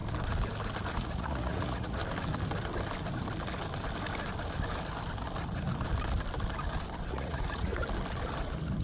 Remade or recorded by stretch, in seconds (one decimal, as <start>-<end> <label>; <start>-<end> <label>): 0.0-0.9 recorded; 0.9-2.0 remade; 2.0-7.1 recorded; 7.1-7.8 remade; 7.8-8.8 recorded